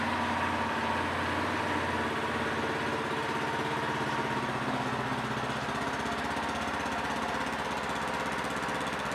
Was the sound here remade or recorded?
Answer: recorded